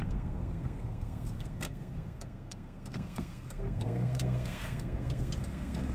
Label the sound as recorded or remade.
remade